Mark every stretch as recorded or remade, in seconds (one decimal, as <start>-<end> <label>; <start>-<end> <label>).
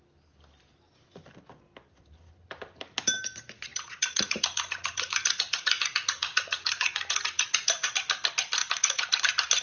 0.0-3.7 recorded; 3.7-7.9 remade; 7.9-8.6 recorded; 8.6-9.2 remade; 9.2-9.6 recorded